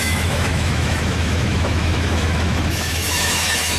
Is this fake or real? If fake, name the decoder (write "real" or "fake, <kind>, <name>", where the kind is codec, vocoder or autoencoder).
fake, autoencoder, DAC-VAE